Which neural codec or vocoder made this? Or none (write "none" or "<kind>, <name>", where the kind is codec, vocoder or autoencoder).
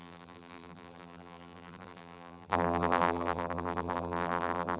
vocoder, BigVGAN v2